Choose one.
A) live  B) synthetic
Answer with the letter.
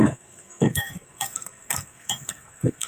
B